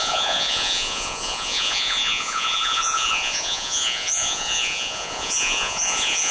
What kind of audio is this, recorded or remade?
remade